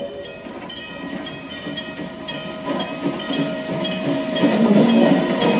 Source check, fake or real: fake